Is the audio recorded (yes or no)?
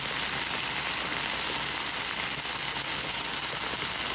yes